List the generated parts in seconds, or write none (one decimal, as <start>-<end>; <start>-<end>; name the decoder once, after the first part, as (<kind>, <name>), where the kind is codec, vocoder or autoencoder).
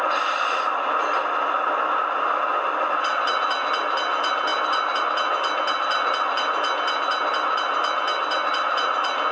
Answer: none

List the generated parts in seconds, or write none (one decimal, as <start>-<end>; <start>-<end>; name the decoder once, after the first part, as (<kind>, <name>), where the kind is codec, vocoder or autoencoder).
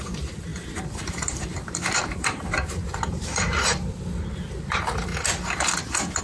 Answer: 0.0-5.1 (vocoder, BigVGAN v2)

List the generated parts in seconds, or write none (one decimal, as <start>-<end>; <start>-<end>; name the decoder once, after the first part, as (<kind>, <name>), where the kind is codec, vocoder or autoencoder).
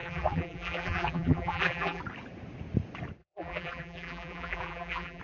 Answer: 0.0-2.0 (vocoder, BigVGAN v2); 3.2-5.2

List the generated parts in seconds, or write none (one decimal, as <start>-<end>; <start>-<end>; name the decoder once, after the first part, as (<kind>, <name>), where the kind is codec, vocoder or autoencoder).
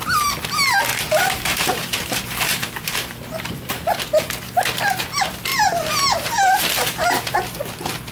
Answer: 0.9-3.8 (vocoder, BigVGAN v2); 5.5-6.6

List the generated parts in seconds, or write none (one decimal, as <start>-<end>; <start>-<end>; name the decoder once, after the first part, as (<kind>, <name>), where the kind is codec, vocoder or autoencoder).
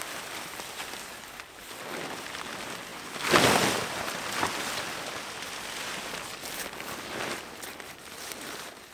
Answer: none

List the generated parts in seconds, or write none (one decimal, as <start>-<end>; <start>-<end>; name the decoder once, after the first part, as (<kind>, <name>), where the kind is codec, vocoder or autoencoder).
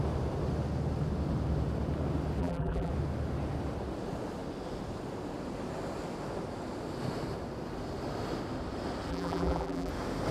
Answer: 2.4-2.9 (vocoder, BigVGAN v2); 9.1-9.9